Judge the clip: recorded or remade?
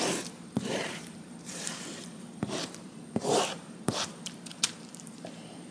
remade